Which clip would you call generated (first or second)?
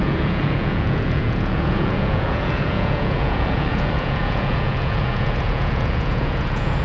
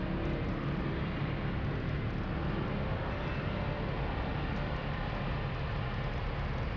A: first